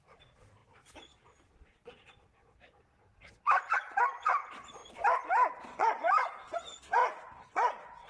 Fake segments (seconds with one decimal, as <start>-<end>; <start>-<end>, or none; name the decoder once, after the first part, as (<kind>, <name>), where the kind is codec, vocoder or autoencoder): 0.0-4.8 (vocoder, Vocos); 5.5-8.1